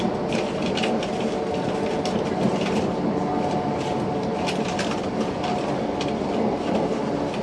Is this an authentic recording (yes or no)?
yes